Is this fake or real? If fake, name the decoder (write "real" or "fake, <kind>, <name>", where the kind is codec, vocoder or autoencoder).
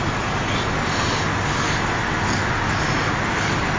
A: real